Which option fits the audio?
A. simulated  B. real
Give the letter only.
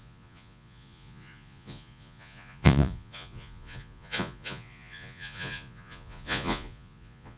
A